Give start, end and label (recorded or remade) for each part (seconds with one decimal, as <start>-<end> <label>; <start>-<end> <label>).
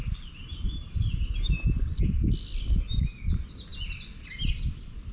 0.0-2.0 remade; 2.0-5.1 recorded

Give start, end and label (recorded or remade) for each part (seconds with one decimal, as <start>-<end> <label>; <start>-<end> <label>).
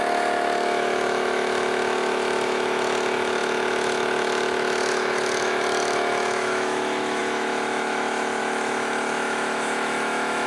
0.0-10.5 remade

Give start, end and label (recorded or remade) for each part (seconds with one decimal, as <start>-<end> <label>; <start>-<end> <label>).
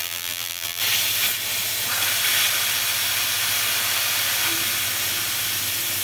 0.0-0.8 remade; 0.8-6.0 recorded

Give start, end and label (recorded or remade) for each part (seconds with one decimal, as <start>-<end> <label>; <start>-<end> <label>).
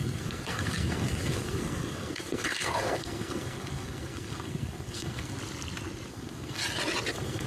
0.0-5.4 remade; 5.4-6.1 recorded; 6.1-6.6 remade; 6.6-7.1 recorded; 7.1-7.5 remade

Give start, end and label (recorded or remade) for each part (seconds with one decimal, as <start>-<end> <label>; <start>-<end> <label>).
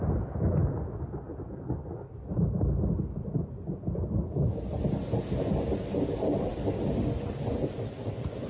0.0-8.5 recorded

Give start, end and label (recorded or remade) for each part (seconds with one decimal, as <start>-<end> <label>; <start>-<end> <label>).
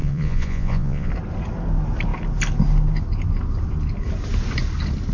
0.0-1.1 remade; 1.1-5.1 recorded